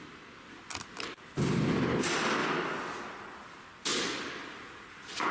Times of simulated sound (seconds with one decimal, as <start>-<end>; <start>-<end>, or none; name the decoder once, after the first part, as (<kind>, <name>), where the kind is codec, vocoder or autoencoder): 2.4-3.0 (vocoder, BigVGAN v2); 3.9-5.3